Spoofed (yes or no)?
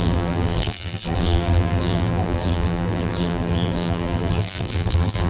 yes